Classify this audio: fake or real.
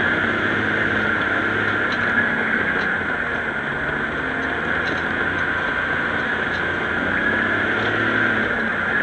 real